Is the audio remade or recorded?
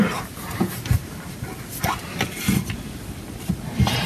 recorded